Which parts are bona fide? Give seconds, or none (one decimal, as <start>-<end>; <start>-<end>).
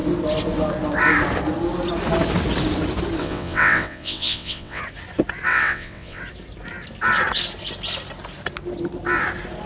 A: 0.0-3.2; 4.8-5.5; 6.2-9.7